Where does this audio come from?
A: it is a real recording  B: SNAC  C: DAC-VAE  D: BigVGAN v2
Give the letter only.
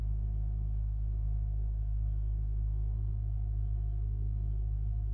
B